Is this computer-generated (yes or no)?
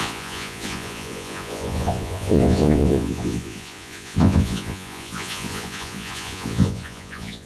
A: yes